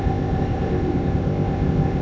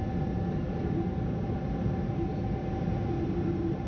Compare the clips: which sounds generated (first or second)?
first